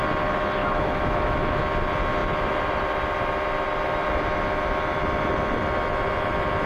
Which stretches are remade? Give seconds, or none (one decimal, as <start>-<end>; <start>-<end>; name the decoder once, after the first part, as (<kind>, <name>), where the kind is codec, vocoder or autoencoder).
0.6-1.6 (autoencoder, DAC-VAE)